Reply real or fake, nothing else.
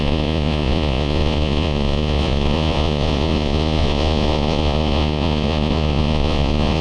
fake